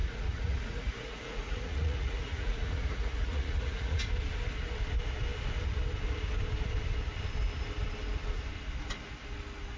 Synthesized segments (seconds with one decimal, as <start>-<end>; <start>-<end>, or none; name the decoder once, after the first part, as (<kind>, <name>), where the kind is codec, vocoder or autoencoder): 0.0-4.0 (vocoder, Vocos)